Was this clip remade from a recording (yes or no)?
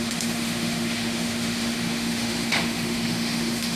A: yes